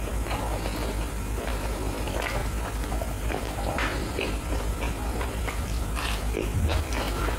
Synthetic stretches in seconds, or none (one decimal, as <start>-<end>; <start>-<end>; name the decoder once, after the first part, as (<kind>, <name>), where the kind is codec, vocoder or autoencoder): 2.4-6.8 (vocoder, BigVGAN v2)